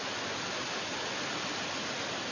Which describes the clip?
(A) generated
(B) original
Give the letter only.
B